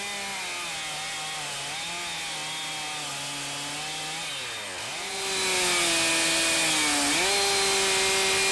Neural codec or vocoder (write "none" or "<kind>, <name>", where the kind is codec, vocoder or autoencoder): none